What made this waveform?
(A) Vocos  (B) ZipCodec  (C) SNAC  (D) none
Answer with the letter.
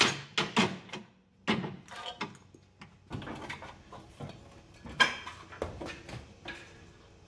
D